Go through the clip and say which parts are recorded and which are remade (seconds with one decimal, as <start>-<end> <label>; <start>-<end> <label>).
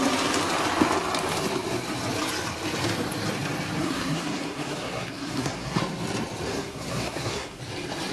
0.0-3.8 recorded; 3.8-5.8 remade; 5.8-6.5 recorded; 6.5-7.6 remade; 7.6-8.1 recorded